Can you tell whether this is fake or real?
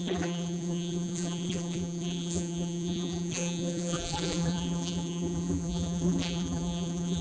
fake